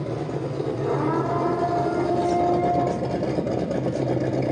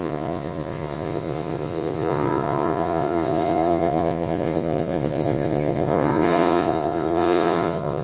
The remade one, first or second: second